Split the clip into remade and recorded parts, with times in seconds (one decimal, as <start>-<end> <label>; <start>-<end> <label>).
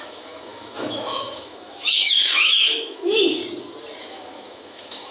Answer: 0.0-3.4 remade; 3.4-4.0 recorded; 4.0-5.1 remade